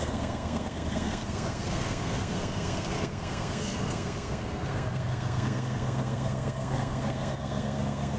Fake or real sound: fake